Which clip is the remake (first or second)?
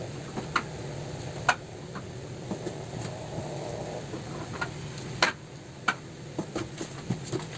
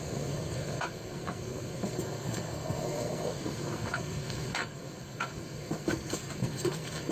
second